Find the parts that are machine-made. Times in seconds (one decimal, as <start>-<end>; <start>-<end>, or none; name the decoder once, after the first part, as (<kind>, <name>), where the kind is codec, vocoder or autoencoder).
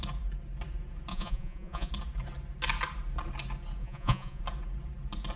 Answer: 1.1-1.9 (vocoder, Vocos); 3.8-4.4